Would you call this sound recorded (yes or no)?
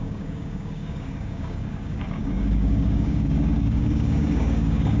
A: no